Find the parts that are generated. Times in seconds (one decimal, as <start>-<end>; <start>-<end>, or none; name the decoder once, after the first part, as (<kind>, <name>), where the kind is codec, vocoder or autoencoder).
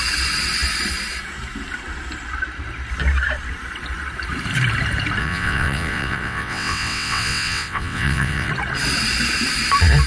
5.2-8.5 (vocoder, WaveNeXt)